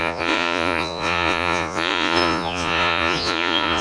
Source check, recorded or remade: remade